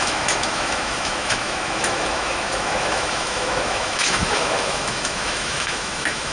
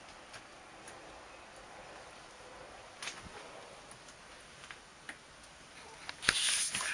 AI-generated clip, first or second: first